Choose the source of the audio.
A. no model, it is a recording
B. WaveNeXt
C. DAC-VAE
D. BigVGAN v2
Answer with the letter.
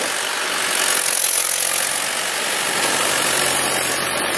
A